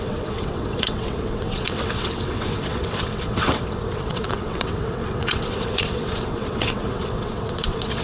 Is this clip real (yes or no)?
no